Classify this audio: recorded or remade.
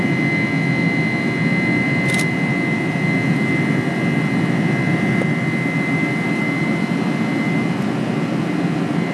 recorded